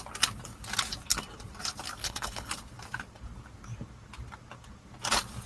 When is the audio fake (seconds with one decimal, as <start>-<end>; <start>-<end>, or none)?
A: 2.0-2.5